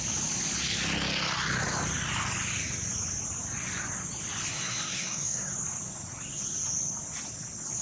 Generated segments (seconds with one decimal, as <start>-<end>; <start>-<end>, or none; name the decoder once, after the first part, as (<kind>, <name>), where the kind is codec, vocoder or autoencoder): 4.5-5.5 (codec, SNAC)